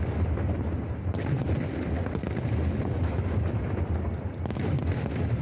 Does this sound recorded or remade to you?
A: remade